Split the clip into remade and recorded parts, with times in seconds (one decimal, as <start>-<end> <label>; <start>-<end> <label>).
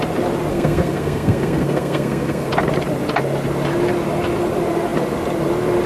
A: 0.0-0.5 recorded; 0.5-2.5 remade; 2.5-5.9 recorded